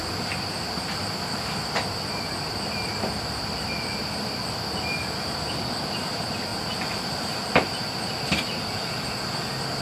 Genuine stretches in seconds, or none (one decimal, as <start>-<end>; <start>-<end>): 2.9-3.5; 6.5-7.0